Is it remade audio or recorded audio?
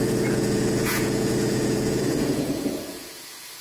remade